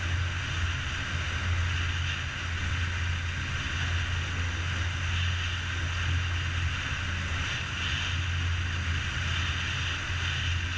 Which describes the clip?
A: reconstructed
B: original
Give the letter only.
B